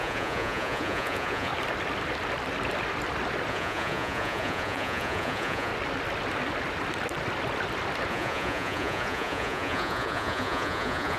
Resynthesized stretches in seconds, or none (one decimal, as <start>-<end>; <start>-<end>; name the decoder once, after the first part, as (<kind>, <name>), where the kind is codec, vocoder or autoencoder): 0.0-1.5 (vocoder, Vocos); 3.5-5.7; 8.1-11.2